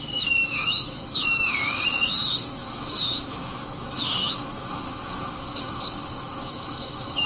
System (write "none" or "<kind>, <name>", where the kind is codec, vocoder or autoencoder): autoencoder, DAC-VAE